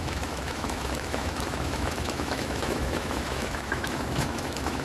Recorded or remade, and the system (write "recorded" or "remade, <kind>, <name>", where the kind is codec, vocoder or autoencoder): remade, autoencoder, DAC-VAE